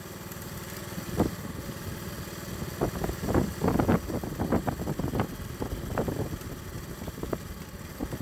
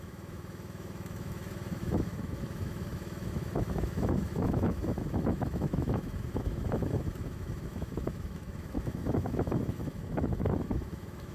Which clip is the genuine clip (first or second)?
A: first